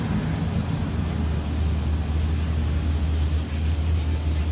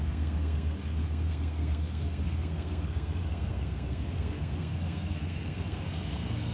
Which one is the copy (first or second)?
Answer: second